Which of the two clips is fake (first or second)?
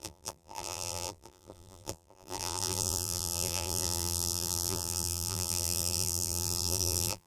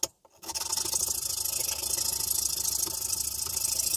first